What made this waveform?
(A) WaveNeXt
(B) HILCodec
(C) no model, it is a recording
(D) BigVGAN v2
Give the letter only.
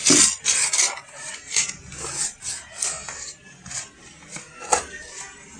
C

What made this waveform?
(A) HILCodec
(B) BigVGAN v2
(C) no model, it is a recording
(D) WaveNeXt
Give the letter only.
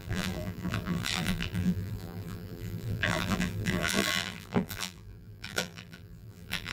B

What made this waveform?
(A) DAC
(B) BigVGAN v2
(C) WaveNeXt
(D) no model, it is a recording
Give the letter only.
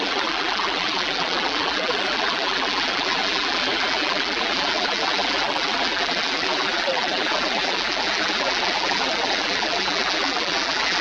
B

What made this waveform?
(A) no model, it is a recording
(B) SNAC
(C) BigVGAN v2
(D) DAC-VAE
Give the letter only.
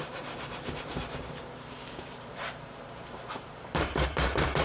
C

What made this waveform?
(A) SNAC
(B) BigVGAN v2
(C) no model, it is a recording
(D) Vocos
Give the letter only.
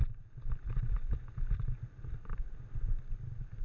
B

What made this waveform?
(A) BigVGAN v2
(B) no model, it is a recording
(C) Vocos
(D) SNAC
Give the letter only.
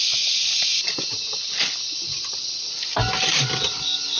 B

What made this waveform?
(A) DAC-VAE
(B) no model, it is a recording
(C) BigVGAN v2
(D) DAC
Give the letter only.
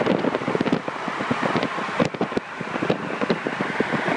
B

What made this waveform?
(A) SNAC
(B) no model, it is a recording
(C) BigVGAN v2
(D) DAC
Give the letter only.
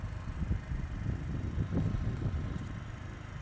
B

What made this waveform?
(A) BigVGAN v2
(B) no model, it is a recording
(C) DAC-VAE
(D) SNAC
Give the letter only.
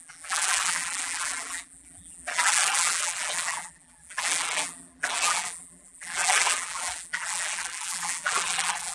A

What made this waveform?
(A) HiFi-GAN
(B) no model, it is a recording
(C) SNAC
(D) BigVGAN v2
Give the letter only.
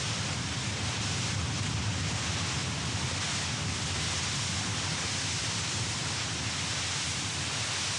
B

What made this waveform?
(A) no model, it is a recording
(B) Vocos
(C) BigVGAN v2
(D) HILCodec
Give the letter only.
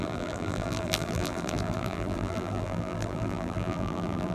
C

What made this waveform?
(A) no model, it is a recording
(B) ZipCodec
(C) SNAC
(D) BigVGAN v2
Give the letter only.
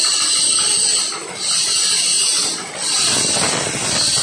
A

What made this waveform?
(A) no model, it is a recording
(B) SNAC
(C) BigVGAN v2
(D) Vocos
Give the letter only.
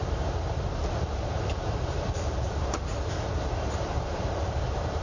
C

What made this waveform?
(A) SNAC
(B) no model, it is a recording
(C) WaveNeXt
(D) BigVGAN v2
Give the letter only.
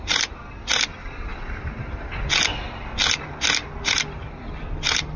B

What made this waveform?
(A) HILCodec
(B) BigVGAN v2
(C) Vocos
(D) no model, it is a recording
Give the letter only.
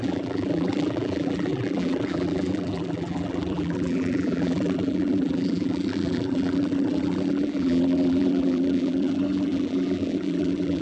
B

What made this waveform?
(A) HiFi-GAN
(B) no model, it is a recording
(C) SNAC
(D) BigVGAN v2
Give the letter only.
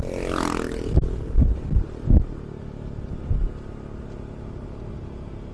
B